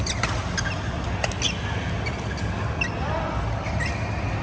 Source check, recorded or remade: recorded